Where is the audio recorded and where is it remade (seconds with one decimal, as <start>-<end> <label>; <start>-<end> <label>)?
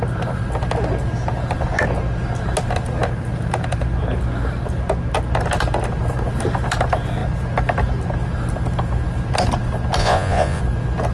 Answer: 0.0-10.0 recorded; 10.0-10.6 remade; 10.6-11.1 recorded